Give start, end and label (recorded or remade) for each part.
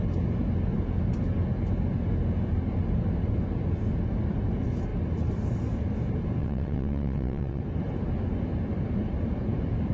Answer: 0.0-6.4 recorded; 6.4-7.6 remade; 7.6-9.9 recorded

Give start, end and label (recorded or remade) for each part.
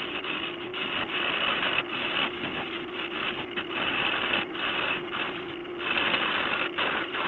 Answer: 0.0-7.3 recorded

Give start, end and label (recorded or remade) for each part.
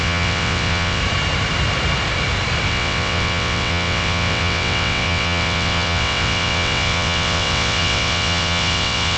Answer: 0.0-1.0 remade; 1.0-2.7 recorded; 2.7-9.2 remade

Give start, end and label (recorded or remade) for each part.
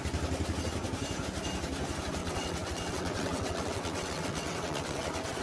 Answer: 0.0-2.2 recorded; 2.2-5.4 remade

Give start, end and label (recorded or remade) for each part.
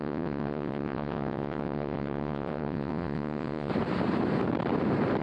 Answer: 0.0-3.7 remade; 3.7-5.2 recorded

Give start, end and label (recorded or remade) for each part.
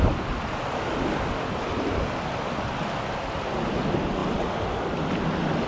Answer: 0.0-5.7 recorded